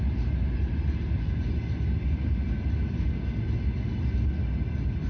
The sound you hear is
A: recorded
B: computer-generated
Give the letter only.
A